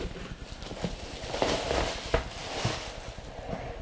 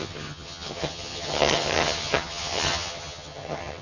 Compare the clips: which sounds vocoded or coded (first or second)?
second